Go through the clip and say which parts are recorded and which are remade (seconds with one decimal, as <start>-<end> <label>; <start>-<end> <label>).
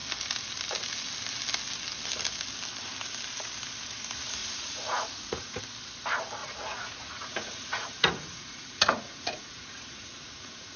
0.0-4.4 recorded; 4.4-5.6 remade; 5.6-6.4 recorded; 6.4-10.8 remade